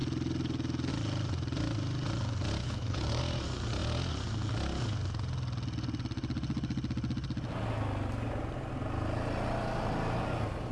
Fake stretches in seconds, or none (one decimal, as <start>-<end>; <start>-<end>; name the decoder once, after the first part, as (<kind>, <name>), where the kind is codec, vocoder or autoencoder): 2.6-3.2 (codec, HILCodec)